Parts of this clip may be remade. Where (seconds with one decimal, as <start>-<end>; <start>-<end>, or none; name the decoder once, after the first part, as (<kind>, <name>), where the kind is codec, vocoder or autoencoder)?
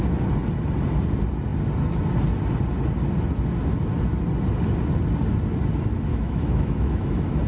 6.1-7.1 (autoencoder, DAC-VAE)